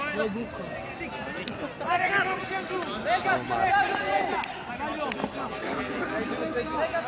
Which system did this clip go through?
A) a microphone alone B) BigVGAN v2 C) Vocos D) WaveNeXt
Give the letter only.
A